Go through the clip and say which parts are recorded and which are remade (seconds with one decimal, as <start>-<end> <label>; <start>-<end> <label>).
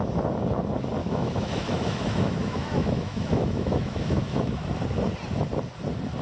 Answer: 0.0-1.0 recorded; 1.0-4.7 remade; 4.7-6.2 recorded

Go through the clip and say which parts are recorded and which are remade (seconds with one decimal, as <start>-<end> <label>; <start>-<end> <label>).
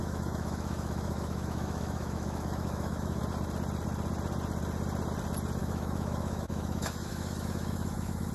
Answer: 0.0-3.2 remade; 3.2-5.6 recorded; 5.6-8.3 remade